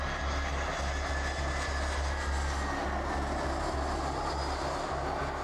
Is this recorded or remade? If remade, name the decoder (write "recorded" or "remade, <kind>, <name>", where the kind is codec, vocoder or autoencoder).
recorded